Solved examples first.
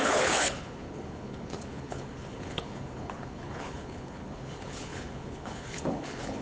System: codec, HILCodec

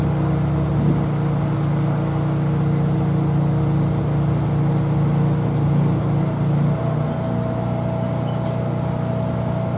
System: none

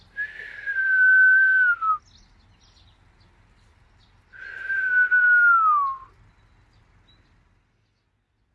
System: none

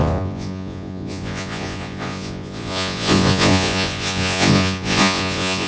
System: vocoder, Vocos